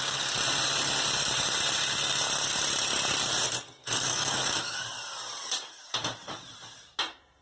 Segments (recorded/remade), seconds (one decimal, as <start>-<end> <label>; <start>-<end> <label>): 0.0-3.8 recorded; 3.8-4.8 remade; 4.8-7.4 recorded

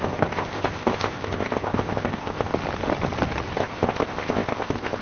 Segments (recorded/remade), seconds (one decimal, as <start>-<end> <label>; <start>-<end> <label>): 0.0-2.5 remade; 2.5-3.6 recorded; 3.6-5.0 remade

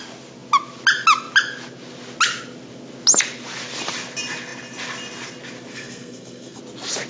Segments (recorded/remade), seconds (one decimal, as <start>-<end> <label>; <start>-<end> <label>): 0.0-5.7 recorded; 5.7-6.6 remade; 6.6-7.1 recorded